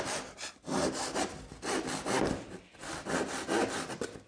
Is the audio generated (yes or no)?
no